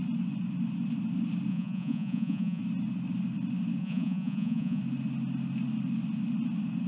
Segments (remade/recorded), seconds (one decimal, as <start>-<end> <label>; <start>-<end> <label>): 0.0-1.5 recorded; 1.5-2.6 remade; 2.6-3.8 recorded; 3.8-4.8 remade; 4.8-6.9 recorded